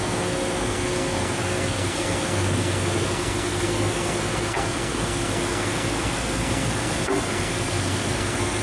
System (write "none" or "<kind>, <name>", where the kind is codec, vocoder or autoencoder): codec, SNAC